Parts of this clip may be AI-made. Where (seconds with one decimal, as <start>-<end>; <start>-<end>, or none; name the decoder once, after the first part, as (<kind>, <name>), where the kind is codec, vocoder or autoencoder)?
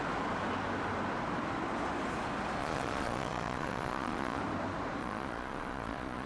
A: 2.6-4.4 (vocoder, Vocos); 5.0-6.3